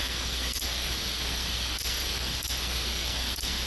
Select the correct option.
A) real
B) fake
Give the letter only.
B